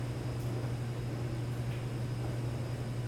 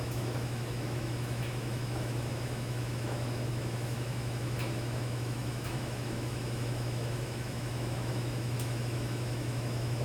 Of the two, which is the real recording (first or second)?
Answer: first